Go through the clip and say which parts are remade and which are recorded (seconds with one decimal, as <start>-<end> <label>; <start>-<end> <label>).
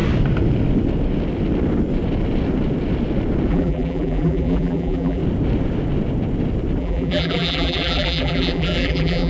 0.0-3.5 recorded; 3.5-5.2 remade; 5.2-6.8 recorded; 6.8-9.3 remade